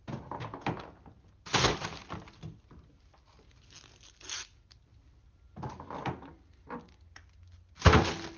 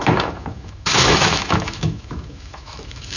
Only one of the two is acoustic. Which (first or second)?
first